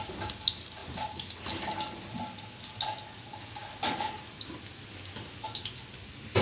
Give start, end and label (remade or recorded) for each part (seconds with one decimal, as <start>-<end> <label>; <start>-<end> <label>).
0.0-6.4 recorded